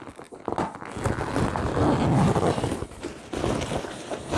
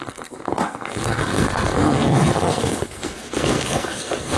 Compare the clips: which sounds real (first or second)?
first